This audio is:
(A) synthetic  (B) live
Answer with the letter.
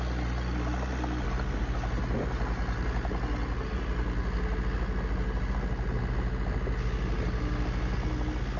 B